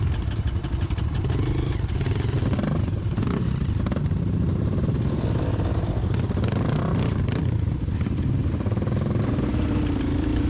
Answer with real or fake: fake